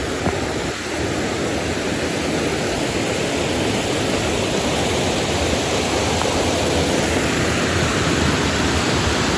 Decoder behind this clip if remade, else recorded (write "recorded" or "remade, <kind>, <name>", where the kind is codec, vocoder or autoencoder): recorded